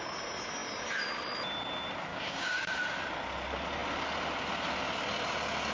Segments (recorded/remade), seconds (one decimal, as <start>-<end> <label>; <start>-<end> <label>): 0.0-2.1 recorded; 2.1-2.7 remade; 2.7-5.7 recorded

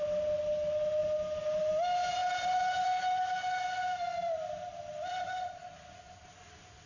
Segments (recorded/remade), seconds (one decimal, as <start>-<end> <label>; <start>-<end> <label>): 0.0-6.9 recorded

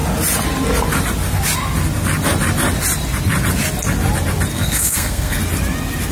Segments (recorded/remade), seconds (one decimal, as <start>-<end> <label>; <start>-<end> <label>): 0.0-4.5 recorded; 4.5-5.4 remade; 5.4-6.1 recorded

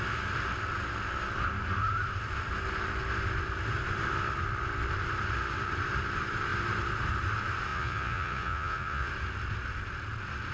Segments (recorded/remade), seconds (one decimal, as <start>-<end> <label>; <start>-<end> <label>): 0.0-7.7 recorded; 7.7-9.1 remade; 9.1-10.5 recorded

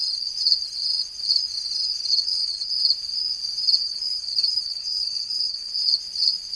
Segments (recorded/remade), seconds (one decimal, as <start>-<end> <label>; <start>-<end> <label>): 0.0-2.1 recorded; 2.1-2.7 remade; 2.7-3.8 recorded; 3.8-5.7 remade; 5.7-6.6 recorded

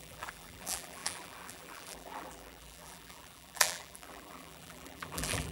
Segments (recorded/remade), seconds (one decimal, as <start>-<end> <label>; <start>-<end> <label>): 0.0-5.5 remade

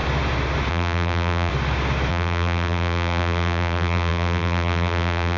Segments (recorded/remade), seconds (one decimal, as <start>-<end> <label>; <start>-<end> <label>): 0.0-0.7 recorded; 0.7-1.5 remade; 1.5-2.1 recorded; 2.1-5.4 remade

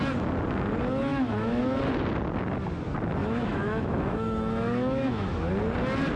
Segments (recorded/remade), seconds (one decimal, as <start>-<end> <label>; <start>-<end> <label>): 0.0-1.1 recorded; 1.1-1.6 remade; 1.6-3.2 recorded; 3.2-5.5 remade; 5.5-6.2 recorded